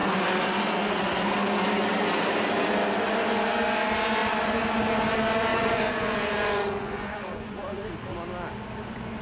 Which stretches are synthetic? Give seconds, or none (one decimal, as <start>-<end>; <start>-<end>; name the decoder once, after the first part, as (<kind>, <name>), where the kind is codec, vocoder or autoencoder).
5.5-7.9 (vocoder, Vocos)